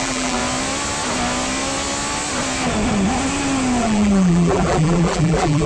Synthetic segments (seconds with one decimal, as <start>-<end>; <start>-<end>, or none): 0.0-0.4; 3.8-5.7

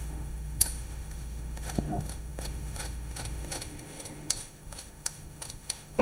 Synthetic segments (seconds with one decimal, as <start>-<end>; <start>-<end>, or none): 0.0-6.0

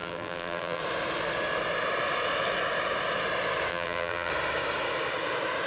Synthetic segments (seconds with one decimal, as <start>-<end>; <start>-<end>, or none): 0.0-0.8; 3.7-4.3